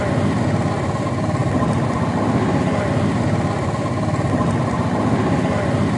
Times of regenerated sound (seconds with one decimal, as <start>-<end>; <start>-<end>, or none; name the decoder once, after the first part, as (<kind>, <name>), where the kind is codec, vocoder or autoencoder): none

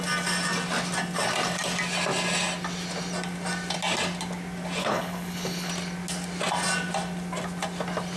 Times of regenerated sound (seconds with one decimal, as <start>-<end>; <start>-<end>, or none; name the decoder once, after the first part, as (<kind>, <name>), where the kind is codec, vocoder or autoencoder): 4.8-5.7 (codec, HILCodec)